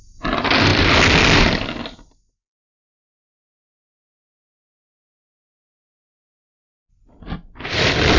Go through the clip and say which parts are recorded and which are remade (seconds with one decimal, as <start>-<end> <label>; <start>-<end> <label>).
0.0-8.2 recorded